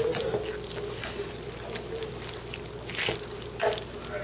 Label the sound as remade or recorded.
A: recorded